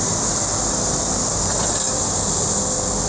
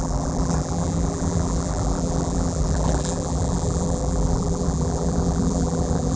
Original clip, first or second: first